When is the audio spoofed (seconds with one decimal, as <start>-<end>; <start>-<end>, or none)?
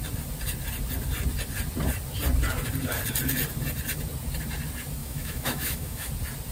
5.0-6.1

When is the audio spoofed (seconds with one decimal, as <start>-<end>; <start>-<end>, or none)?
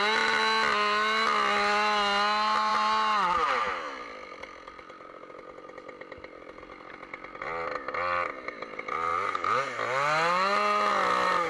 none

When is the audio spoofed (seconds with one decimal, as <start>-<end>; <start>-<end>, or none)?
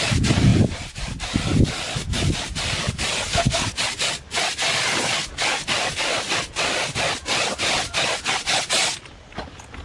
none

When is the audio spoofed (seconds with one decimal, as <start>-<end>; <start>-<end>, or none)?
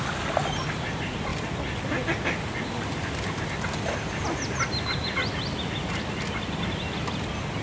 none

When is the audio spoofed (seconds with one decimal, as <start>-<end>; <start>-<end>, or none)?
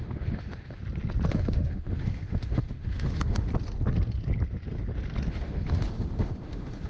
0.0-0.8; 1.3-3.5; 5.3-6.9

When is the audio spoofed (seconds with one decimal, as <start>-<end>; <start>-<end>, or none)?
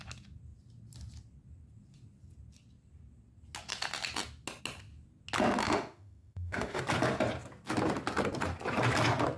5.6-6.8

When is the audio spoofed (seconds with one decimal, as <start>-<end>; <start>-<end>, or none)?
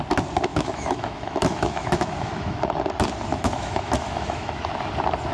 0.5-2.6; 3.3-4.6